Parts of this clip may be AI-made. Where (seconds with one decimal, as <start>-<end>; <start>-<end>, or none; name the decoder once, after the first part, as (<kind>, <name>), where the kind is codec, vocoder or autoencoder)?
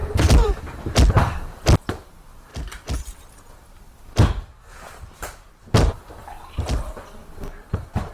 0.0-0.6 (vocoder, BigVGAN v2); 2.5-6.1; 7.2-8.1